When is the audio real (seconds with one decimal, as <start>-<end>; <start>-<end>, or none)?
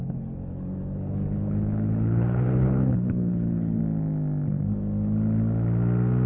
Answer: 3.8-6.3